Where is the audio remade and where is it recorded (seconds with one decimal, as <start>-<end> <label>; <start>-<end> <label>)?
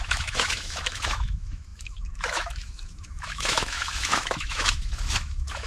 0.0-5.7 remade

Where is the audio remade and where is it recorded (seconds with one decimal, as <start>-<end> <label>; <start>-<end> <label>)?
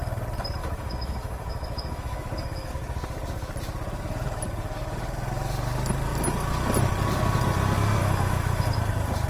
0.0-0.6 recorded; 0.6-2.7 remade; 2.7-8.0 recorded; 8.0-8.6 remade; 8.6-9.3 recorded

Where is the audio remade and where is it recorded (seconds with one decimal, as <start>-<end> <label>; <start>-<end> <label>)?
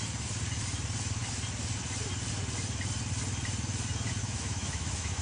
0.0-4.2 recorded; 4.2-5.2 remade